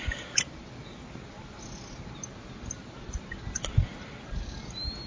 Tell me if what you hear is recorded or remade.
recorded